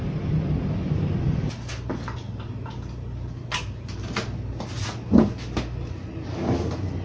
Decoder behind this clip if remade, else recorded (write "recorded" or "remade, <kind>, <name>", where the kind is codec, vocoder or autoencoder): recorded